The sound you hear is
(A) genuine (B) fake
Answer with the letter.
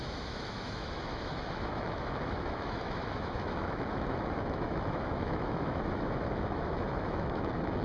B